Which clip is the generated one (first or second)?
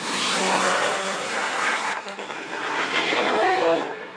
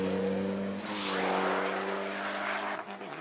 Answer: first